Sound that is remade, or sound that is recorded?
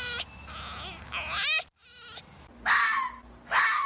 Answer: recorded